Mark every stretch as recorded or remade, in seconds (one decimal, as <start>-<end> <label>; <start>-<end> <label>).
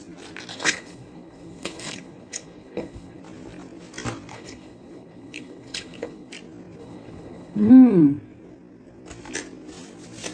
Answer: 0.0-0.5 recorded; 0.5-3.2 remade; 3.2-4.3 recorded; 4.3-6.3 remade; 6.3-6.8 recorded; 6.8-7.7 remade; 7.7-10.3 recorded